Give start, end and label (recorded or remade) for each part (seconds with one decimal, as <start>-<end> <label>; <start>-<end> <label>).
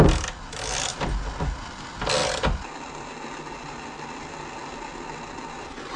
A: 0.0-6.0 recorded